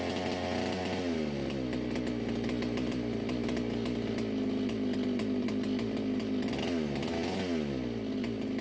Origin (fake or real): real